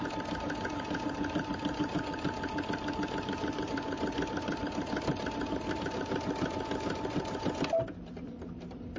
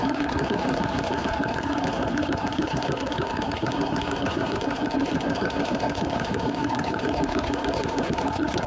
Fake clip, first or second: second